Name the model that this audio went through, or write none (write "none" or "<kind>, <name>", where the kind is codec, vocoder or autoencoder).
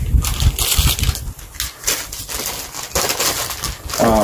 none